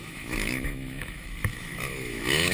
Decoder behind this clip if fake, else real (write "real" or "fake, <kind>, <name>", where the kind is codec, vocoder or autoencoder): fake, autoencoder, DAC-VAE